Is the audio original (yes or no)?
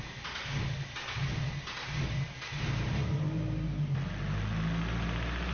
yes